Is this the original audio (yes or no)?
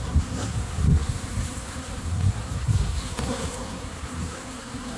no